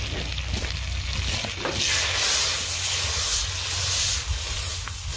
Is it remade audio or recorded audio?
recorded